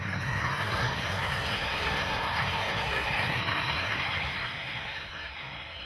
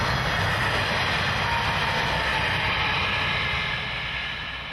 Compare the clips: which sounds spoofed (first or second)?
first